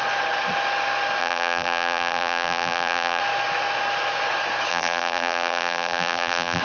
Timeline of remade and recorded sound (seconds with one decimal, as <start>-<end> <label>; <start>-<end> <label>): 0.0-1.2 recorded; 1.2-3.2 remade; 3.2-4.7 recorded; 4.7-6.6 remade